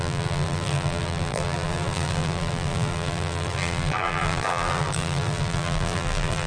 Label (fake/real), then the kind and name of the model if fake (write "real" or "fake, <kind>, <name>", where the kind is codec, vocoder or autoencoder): fake, vocoder, BigVGAN v2